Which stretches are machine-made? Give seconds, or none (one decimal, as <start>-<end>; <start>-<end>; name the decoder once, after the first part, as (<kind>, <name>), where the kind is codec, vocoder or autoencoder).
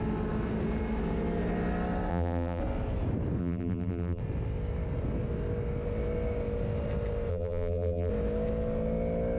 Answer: 2.1-2.6 (vocoder, BigVGAN v2); 3.4-4.2; 7.3-8.1